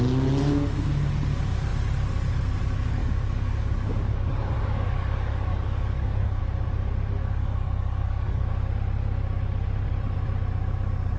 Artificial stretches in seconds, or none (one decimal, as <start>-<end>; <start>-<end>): 3.0-6.4; 7.2-8.5